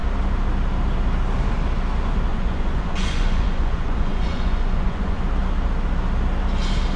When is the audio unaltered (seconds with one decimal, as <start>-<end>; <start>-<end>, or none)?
0.0-2.3; 5.2-7.0